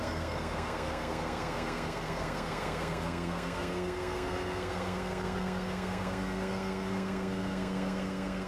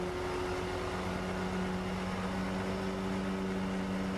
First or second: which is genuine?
second